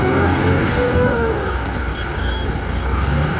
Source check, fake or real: fake